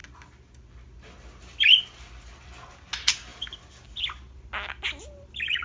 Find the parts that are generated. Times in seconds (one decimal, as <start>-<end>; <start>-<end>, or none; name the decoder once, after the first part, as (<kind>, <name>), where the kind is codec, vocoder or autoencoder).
none